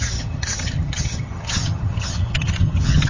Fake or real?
fake